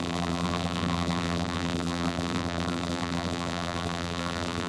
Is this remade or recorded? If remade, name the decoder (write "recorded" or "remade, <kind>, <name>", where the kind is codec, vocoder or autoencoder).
remade, vocoder, BigVGAN v2